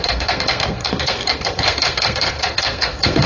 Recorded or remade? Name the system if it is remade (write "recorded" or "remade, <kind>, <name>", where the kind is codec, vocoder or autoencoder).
remade, codec, SNAC